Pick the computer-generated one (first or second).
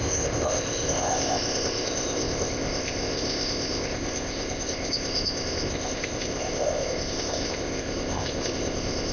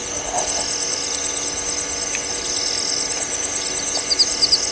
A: first